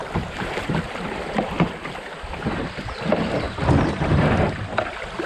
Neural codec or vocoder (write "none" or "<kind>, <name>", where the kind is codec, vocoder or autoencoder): vocoder, BigVGAN v2